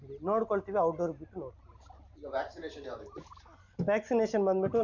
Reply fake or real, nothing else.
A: real